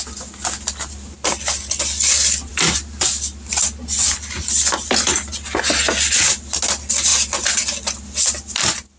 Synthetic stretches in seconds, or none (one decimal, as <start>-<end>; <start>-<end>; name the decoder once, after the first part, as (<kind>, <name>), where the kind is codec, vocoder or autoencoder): none